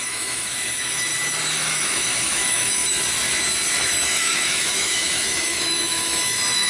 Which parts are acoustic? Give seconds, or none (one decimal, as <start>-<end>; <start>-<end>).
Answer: 1.1-1.6; 2.8-3.7